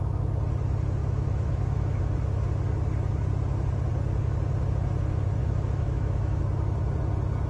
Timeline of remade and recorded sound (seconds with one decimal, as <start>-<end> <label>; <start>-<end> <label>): 0.0-1.0 recorded; 1.0-2.0 remade; 2.0-5.4 recorded; 5.4-6.4 remade; 6.4-7.5 recorded